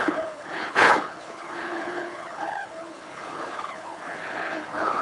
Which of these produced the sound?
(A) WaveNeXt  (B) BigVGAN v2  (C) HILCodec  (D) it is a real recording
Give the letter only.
C